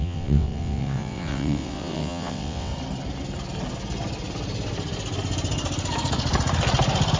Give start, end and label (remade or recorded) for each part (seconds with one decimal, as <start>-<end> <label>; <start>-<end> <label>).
0.0-2.7 remade; 2.7-7.2 recorded